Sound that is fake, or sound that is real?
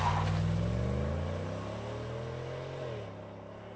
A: real